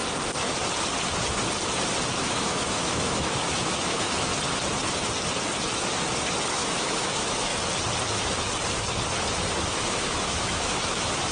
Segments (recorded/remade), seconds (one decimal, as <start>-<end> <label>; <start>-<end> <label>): 0.0-2.2 recorded; 2.2-4.3 remade; 4.3-6.5 recorded; 6.5-7.5 remade; 7.5-9.7 recorded; 9.7-11.3 remade